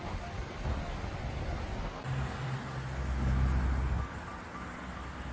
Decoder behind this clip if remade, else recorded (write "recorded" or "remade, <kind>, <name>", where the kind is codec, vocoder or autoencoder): recorded